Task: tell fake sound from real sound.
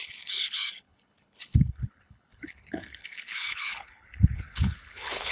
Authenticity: fake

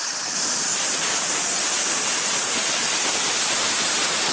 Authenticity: real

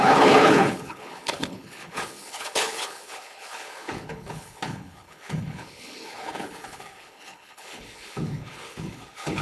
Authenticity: fake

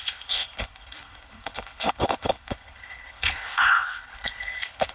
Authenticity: fake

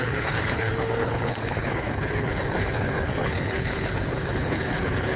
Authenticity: fake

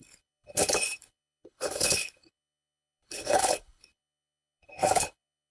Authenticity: fake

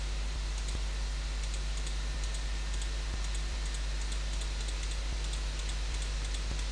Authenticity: real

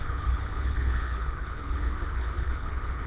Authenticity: fake